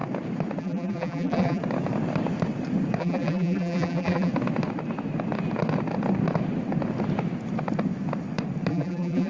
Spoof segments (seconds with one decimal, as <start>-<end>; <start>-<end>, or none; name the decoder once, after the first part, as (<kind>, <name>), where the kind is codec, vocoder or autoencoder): 0.6-1.6 (vocoder, BigVGAN v2); 3.0-4.3; 8.7-9.3

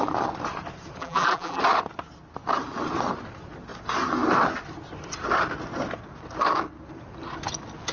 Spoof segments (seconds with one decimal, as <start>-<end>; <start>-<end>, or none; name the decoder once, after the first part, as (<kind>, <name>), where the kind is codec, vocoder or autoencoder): 1.0-1.6 (vocoder, BigVGAN v2)

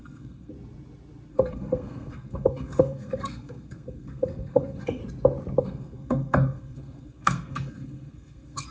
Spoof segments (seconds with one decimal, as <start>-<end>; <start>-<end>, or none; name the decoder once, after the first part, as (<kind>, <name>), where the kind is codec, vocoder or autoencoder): 0.0-0.5 (codec, SNAC); 1.3-5.0; 5.6-8.7

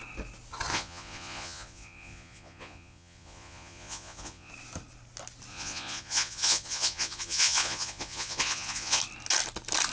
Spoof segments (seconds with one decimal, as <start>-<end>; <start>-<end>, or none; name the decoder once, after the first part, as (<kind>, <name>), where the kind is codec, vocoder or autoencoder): 0.7-4.5 (vocoder, Vocos); 5.5-9.0

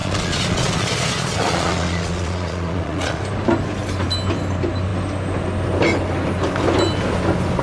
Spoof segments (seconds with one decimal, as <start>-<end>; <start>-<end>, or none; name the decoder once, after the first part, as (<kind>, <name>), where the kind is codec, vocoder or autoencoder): 0.0-3.2 (vocoder, Vocos)

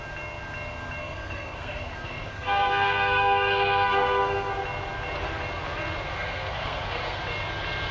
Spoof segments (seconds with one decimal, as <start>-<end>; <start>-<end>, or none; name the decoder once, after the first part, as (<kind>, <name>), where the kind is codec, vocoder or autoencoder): 1.0-4.5 (codec, SNAC); 6.1-7.2

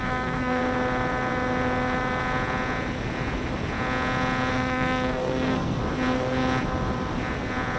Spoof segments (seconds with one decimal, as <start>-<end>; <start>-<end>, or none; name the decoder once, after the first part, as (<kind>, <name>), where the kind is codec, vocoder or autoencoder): 0.0-0.6 (codec, SNAC); 4.5-5.8